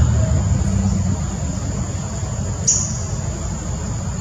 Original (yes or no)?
yes